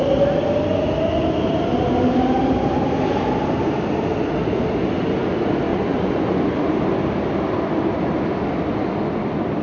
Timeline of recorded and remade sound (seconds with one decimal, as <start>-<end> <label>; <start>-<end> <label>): 0.0-5.7 recorded; 5.7-6.4 remade; 6.4-9.6 recorded

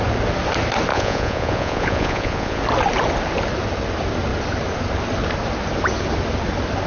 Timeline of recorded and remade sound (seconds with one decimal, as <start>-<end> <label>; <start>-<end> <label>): 0.0-0.9 recorded; 0.9-2.6 remade; 2.6-6.9 recorded